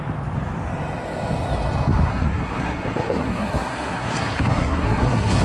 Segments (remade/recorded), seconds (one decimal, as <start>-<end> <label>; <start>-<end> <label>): 0.0-2.1 recorded; 2.1-5.4 remade